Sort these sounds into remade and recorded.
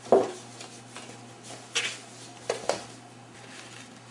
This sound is recorded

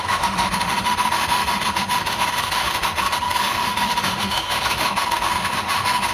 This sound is remade